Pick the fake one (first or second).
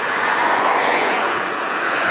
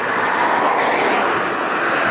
first